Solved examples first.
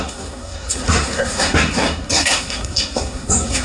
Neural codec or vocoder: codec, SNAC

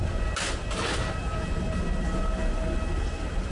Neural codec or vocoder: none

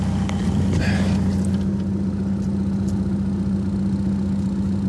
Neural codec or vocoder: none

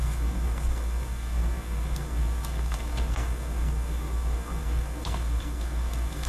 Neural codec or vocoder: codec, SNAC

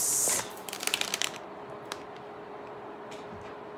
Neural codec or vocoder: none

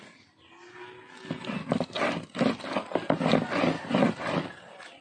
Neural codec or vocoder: none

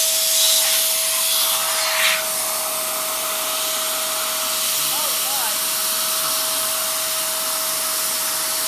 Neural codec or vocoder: none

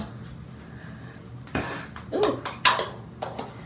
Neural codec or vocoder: none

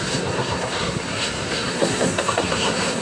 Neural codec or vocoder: codec, SNAC